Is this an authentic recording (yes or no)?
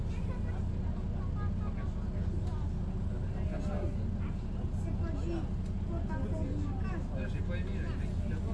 yes